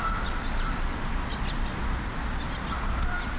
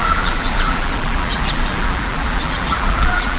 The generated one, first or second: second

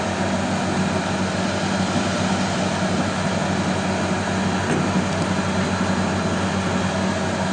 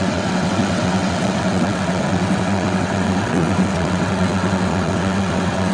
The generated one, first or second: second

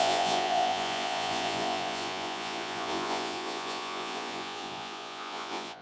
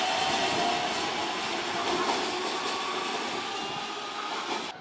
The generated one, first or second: first